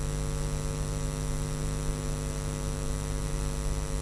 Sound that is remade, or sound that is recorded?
recorded